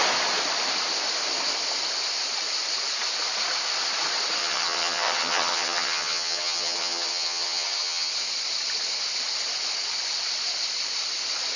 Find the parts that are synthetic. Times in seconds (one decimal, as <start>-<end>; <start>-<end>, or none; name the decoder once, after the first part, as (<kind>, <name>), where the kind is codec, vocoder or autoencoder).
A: 4.4-8.1 (vocoder, HiFi-GAN)